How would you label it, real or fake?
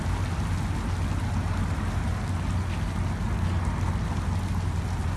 real